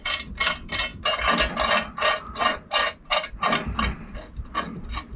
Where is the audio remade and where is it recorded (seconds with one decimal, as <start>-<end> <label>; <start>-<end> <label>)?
0.0-5.2 recorded